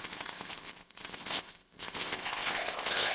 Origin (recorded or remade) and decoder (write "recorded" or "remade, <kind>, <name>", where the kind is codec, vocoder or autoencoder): remade, codec, ZipCodec